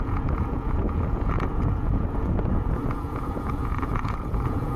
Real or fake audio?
fake